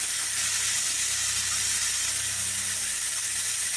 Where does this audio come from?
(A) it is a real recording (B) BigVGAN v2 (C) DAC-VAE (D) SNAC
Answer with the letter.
A